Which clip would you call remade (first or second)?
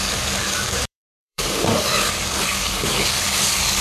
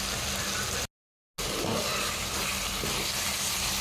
first